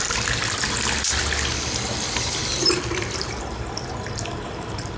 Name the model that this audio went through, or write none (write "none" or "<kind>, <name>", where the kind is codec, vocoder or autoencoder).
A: vocoder, BigVGAN v2